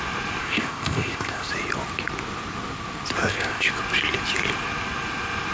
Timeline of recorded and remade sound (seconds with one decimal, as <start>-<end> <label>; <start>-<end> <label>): 0.0-0.4 recorded; 0.4-1.5 remade; 1.5-3.2 recorded; 3.2-3.7 remade; 3.7-5.5 recorded